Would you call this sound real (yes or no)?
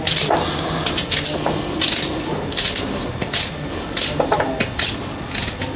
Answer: yes